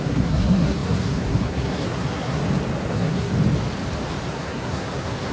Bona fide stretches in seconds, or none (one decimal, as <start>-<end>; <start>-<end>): 2.4-2.9; 3.3-4.3